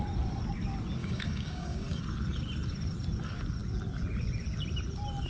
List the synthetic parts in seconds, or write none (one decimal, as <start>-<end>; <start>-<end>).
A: 1.0-2.0